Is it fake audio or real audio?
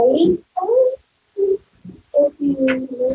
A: real